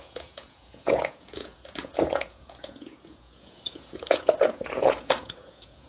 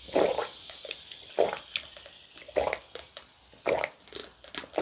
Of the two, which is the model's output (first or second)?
first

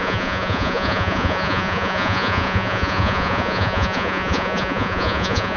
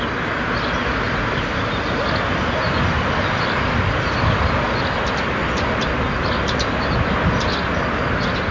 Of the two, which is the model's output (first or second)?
first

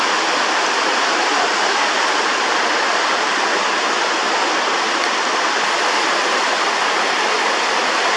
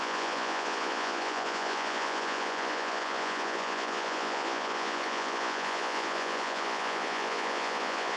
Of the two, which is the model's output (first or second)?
second